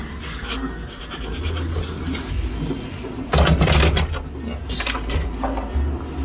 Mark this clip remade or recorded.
recorded